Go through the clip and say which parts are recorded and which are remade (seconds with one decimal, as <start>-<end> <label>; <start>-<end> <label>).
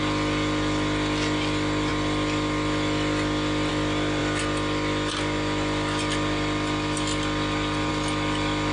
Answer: 0.0-8.7 recorded